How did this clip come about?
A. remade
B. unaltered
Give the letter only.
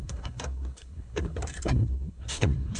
A